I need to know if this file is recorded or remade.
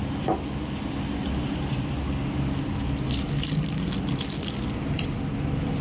recorded